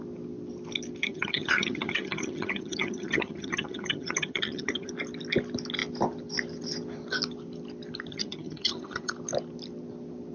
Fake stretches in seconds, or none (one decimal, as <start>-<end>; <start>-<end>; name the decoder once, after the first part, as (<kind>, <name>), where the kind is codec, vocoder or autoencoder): 1.0-4.9 (vocoder, HiFi-GAN); 8.1-9.1